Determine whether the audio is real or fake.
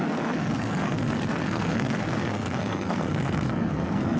fake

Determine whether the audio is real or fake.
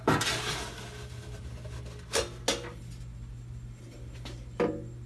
real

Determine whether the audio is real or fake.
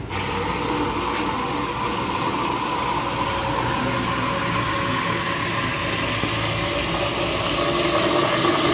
real